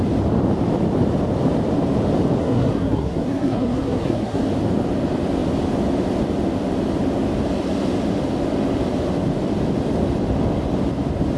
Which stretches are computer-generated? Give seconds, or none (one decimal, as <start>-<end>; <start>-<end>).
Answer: 2.4-4.4